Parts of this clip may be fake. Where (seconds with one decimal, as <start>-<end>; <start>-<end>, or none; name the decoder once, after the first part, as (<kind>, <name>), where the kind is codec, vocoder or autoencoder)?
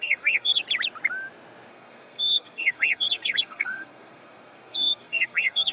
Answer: 0.0-0.6 (codec, SNAC); 1.7-5.7